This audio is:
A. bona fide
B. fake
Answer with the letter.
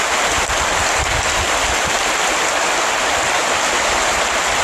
A